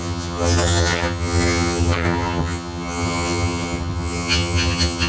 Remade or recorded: remade